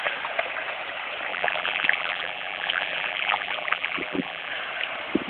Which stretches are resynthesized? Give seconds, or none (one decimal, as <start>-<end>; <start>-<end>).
1.3-4.5